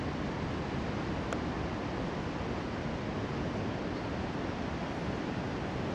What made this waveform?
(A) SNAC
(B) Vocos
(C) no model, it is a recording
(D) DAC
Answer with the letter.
C